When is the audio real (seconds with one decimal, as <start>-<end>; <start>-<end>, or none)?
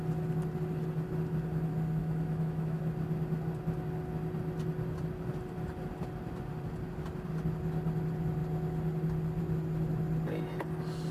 0.0-2.0; 2.8-11.1